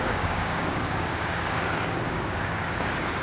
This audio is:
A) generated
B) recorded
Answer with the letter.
A